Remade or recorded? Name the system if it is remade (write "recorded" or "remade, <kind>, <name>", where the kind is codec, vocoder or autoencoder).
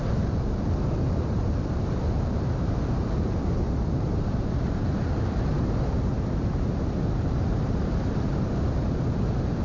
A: remade, vocoder, BigVGAN v2